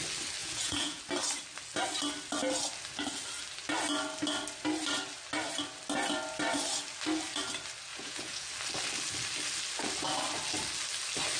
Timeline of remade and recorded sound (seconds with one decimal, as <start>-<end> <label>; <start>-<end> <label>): 0.0-0.4 recorded; 0.4-1.0 remade; 1.0-7.9 recorded; 7.9-8.5 remade; 8.5-11.4 recorded